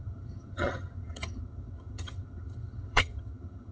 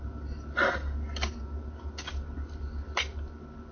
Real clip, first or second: second